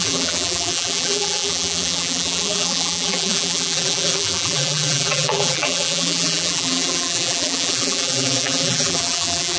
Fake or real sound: fake